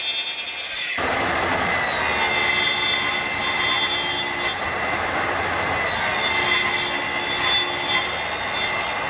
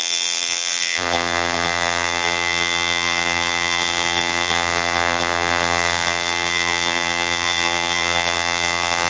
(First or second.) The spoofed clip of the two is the second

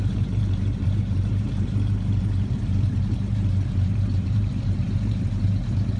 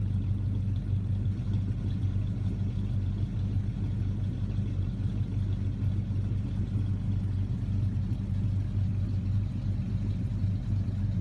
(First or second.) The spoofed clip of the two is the first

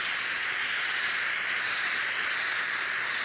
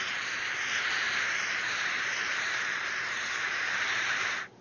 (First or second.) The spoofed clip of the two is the second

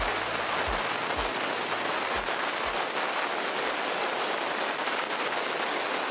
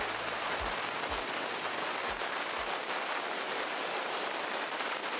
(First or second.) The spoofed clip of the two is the second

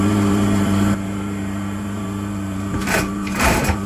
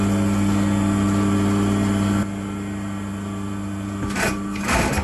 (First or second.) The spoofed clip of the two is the first